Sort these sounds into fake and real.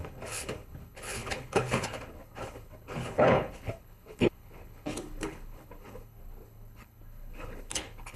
fake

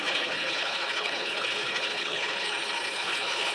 fake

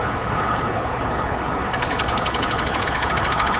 fake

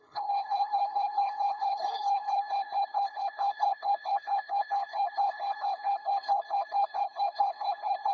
fake